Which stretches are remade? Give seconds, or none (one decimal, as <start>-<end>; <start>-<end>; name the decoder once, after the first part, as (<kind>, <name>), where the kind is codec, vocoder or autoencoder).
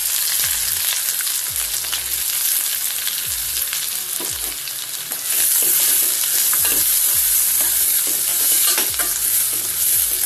6.7-7.8 (vocoder, BigVGAN v2)